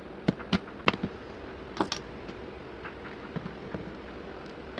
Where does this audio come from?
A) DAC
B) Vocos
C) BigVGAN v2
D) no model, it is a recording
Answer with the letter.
D